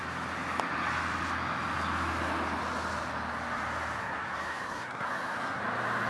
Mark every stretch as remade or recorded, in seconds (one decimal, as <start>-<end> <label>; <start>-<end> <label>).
0.0-4.0 recorded; 4.0-5.6 remade; 5.6-6.1 recorded